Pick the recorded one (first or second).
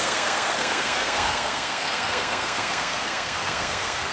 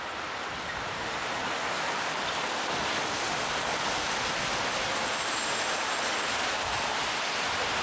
second